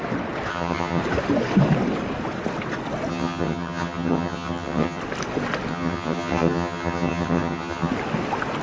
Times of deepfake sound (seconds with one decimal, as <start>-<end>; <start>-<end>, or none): 0.5-1.0; 3.1-5.0; 5.7-7.9